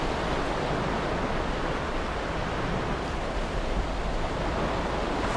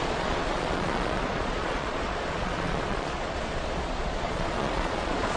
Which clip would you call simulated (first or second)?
second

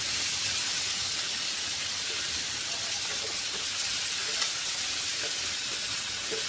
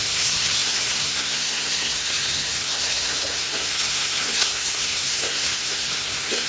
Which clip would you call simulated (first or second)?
second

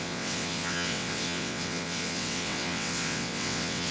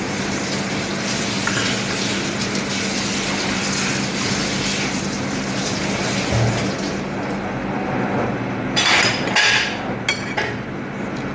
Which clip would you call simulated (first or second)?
first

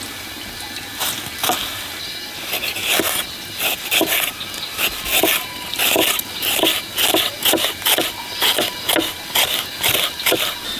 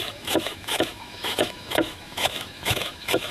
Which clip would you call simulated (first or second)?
second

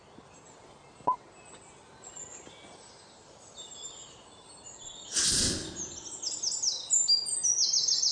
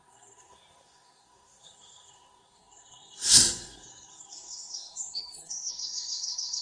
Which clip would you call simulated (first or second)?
second